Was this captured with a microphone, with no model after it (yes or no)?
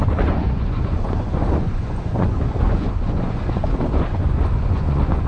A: no